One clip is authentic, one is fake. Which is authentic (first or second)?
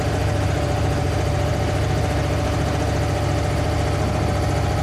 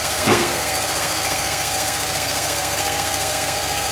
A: first